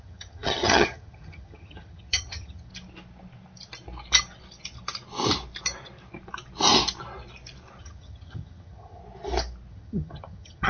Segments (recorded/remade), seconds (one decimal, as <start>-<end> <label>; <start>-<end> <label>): 0.0-2.7 remade; 2.7-7.8 recorded; 7.8-9.0 remade; 9.0-9.7 recorded; 9.7-10.7 remade